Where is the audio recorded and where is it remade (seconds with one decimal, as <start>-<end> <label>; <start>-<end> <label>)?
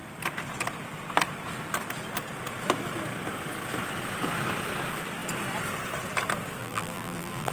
0.0-6.6 recorded; 6.6-7.5 remade